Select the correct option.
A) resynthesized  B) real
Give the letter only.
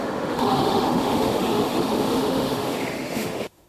A